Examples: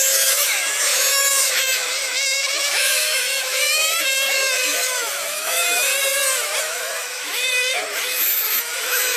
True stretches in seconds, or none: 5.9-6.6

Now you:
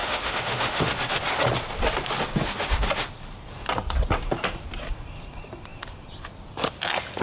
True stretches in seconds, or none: 0.9-7.2

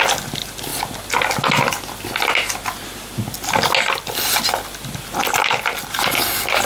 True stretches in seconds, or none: 0.0-6.7